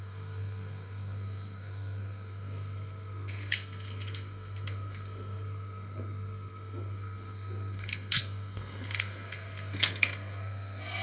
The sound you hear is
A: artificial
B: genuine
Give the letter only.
A